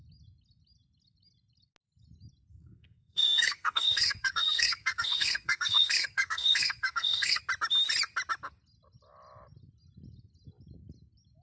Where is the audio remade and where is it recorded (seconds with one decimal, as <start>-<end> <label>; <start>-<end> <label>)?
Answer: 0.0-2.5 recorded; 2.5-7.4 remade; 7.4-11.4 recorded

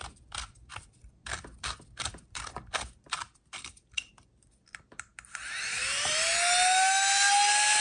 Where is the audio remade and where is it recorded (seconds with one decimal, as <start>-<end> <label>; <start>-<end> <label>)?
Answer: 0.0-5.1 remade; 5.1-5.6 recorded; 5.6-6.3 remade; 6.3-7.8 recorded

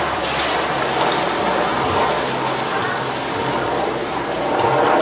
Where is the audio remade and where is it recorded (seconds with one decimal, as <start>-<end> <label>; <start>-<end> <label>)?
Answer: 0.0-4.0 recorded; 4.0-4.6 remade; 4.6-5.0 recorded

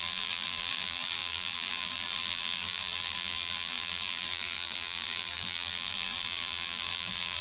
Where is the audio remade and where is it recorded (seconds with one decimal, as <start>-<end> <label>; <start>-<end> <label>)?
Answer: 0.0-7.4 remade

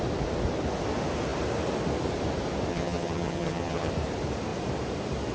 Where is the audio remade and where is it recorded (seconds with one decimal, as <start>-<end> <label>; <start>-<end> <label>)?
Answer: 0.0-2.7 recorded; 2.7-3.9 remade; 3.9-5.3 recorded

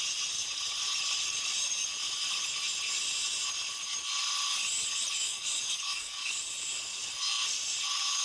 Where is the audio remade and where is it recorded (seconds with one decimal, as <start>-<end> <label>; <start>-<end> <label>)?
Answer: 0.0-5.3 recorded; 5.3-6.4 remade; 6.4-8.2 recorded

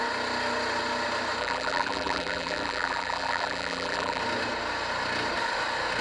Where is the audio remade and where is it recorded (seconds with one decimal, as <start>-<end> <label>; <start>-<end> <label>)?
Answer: 0.0-1.4 recorded; 1.4-4.2 remade; 4.2-6.0 recorded